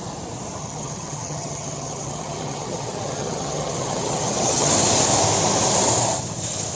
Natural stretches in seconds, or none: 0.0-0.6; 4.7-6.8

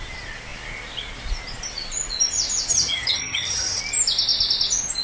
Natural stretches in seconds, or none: 0.0-2.7; 3.8-5.0